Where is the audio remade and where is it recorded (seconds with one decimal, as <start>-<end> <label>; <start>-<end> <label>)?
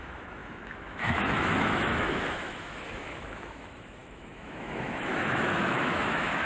0.0-6.5 remade